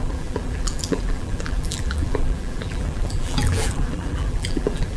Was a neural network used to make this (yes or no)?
yes